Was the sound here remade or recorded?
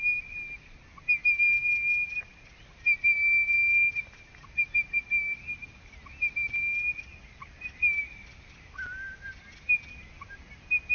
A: recorded